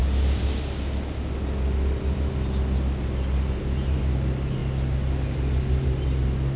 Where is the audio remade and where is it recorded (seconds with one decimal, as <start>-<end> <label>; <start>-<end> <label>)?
0.0-6.6 recorded